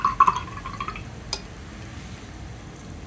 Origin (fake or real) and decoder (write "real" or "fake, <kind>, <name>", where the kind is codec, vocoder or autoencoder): real